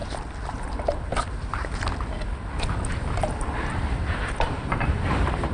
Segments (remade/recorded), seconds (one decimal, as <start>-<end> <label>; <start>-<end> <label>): 0.0-0.5 recorded; 0.5-1.1 remade; 1.1-2.9 recorded; 2.9-5.5 remade